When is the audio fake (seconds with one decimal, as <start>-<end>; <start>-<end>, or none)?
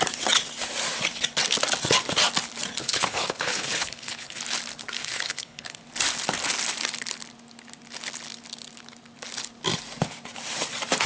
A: 2.8-4.4; 5.0-5.8